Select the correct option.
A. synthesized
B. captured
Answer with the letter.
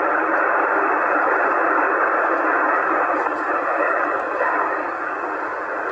B